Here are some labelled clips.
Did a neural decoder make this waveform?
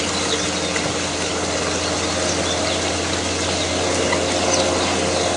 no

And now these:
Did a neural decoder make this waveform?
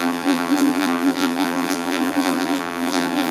yes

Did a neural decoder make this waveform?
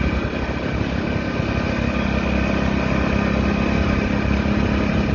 no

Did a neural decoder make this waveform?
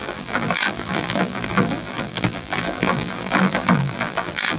yes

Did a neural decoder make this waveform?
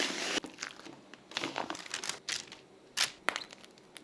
no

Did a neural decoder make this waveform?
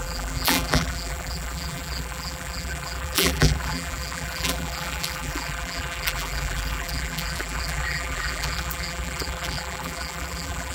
yes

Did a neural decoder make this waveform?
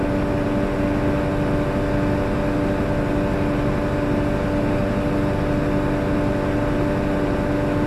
no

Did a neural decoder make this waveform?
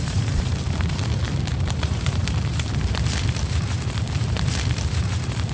yes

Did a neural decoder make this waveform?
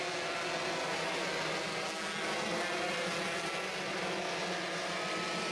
no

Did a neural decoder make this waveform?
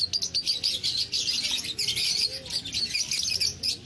no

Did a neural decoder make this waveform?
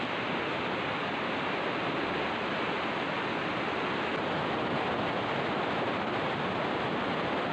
no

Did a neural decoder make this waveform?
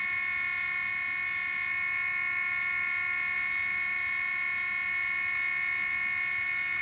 no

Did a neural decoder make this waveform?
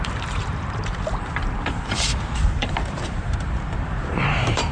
yes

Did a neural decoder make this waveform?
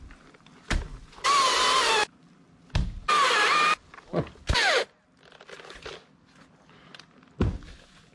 no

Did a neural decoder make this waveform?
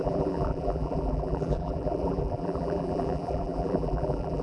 yes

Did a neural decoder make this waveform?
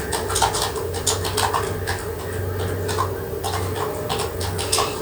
no